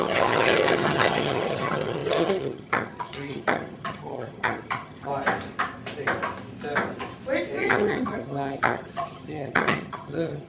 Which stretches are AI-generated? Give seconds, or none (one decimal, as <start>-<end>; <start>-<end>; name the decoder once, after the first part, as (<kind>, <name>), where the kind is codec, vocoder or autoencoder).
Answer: 0.0-5.1 (vocoder, HiFi-GAN); 7.6-10.5